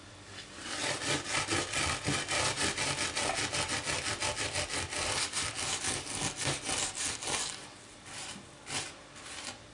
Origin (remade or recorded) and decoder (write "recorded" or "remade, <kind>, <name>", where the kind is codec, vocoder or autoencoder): recorded